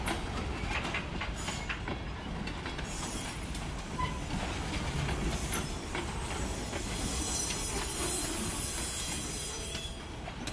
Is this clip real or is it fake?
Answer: real